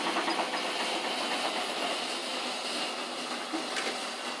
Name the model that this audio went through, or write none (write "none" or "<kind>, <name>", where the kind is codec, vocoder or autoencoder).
none